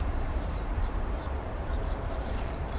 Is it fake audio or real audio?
fake